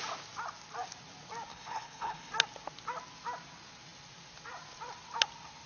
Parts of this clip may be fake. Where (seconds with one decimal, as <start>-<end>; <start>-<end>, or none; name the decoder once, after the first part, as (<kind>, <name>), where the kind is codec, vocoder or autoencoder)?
1.5-2.3 (codec, HILCodec)